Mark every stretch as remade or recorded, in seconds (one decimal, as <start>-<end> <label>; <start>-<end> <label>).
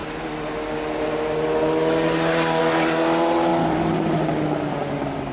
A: 0.0-5.3 recorded